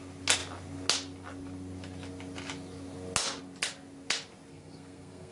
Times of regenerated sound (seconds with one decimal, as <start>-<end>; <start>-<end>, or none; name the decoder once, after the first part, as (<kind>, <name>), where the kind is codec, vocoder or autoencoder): 4.5-5.3 (codec, SNAC)

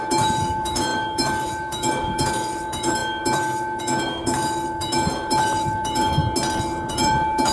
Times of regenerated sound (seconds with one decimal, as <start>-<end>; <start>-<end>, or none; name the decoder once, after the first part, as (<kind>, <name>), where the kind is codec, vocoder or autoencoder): 0.0-6.2 (autoencoder, DAC-VAE); 6.9-7.5

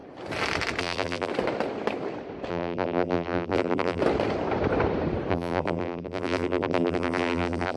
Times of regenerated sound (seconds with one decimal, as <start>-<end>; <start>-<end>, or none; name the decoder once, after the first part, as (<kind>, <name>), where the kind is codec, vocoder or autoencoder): 0.8-1.3 (vocoder, BigVGAN v2); 2.5-4.0; 5.3-7.8

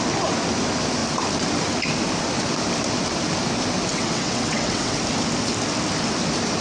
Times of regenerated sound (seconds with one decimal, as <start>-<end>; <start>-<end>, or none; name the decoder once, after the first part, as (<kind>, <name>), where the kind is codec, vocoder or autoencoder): 3.9-5.0 (vocoder, WaveNeXt)

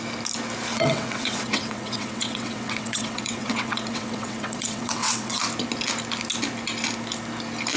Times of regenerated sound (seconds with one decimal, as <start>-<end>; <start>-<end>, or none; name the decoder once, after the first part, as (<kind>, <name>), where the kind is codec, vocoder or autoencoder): 0.7-5.4 (vocoder, WaveNeXt)

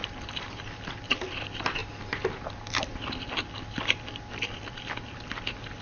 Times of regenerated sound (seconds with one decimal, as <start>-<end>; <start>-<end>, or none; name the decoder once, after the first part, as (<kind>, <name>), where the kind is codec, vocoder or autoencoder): 0.0-5.8 (vocoder, BigVGAN v2)

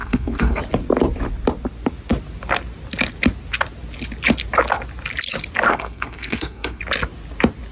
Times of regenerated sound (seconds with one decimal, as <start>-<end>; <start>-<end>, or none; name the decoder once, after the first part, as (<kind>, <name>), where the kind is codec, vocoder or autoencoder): 0.0-0.6 (codec, SNAC); 5.7-6.8